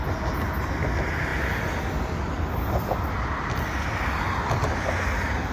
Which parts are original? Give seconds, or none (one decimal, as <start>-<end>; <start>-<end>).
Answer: 0.0-5.5